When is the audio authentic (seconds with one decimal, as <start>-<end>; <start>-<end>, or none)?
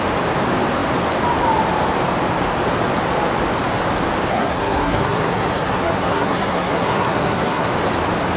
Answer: 0.0-4.3; 7.7-8.4